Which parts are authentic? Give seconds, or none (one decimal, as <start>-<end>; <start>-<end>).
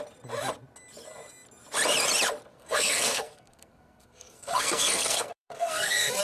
0.0-2.5